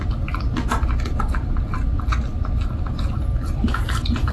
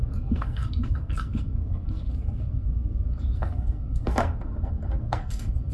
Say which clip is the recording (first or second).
first